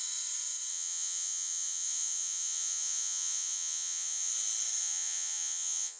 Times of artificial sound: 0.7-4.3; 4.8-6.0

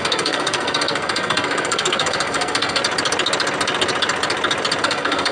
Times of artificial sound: 0.0-2.8; 4.8-5.3

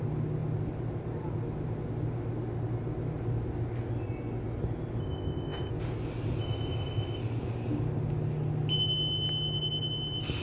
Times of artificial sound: 5.0-5.7; 6.4-7.2